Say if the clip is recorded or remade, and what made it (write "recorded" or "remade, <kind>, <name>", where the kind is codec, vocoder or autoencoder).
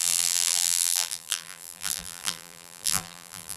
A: remade, vocoder, BigVGAN v2